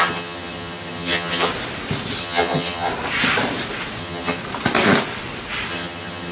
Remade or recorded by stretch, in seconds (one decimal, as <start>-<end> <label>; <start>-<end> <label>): 0.0-1.5 remade; 1.5-2.2 recorded; 2.2-2.9 remade; 2.9-4.0 recorded; 4.0-4.4 remade; 4.4-5.7 recorded; 5.7-6.3 remade

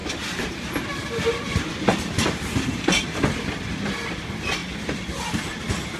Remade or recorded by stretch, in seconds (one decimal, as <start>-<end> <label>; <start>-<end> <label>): 0.0-3.2 remade; 3.2-6.0 recorded

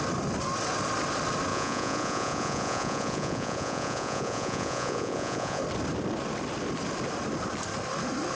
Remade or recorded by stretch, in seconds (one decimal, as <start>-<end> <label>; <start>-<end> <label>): 0.0-1.5 recorded; 1.5-5.6 remade; 5.6-8.3 recorded

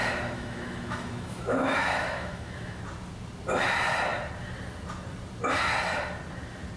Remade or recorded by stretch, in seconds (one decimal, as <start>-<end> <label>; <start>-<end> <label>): 0.0-2.8 remade; 2.8-6.8 recorded